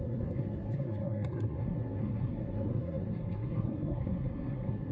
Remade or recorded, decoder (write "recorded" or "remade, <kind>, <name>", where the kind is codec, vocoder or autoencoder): remade, codec, SNAC